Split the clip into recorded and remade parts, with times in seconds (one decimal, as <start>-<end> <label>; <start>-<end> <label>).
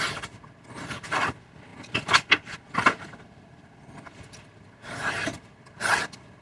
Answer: 0.0-6.4 recorded